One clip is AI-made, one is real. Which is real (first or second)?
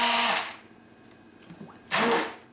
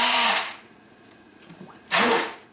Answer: first